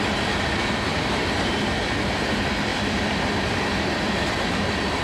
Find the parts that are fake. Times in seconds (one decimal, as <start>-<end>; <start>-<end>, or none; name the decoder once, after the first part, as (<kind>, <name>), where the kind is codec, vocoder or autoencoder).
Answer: 2.7-3.4 (vocoder, BigVGAN v2)